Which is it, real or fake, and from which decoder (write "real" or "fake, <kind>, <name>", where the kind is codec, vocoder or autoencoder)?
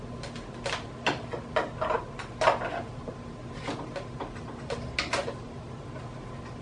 real